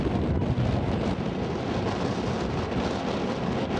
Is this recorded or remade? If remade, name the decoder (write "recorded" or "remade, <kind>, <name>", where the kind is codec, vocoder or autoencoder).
recorded